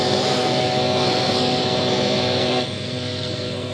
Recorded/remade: remade